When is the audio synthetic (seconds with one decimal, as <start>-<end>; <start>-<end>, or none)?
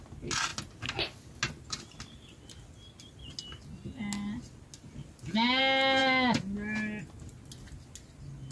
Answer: none